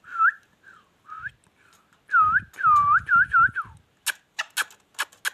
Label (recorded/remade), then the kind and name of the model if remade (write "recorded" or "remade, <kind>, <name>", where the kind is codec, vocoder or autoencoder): recorded